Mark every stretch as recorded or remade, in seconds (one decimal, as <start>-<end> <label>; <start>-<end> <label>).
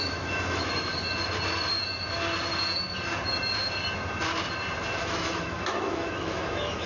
0.0-0.9 remade; 0.9-5.0 recorded; 5.0-6.9 remade